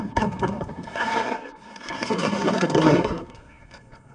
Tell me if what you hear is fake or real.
fake